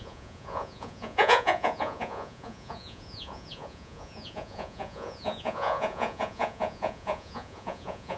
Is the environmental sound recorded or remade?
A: remade